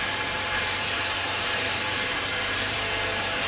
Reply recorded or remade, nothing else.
remade